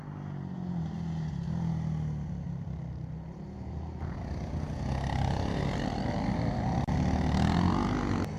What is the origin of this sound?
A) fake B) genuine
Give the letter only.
B